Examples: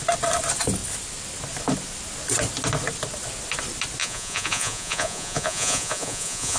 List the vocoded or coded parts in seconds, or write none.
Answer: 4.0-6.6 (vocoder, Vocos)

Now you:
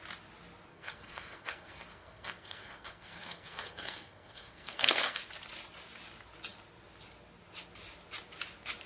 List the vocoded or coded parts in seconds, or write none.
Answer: 0.7-5.2 (codec, SNAC)

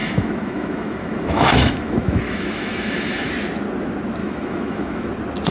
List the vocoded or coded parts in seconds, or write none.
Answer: 0.0-3.3 (autoencoder, DAC-VAE); 4.2-5.1